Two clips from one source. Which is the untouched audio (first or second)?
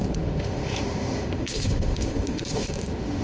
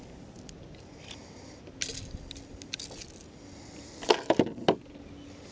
second